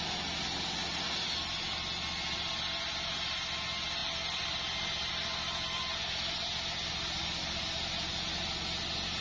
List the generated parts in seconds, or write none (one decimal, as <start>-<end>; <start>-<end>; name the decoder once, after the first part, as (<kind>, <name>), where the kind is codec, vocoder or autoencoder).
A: none